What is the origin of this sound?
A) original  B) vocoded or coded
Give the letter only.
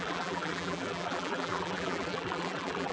B